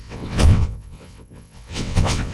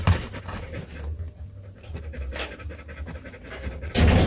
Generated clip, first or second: first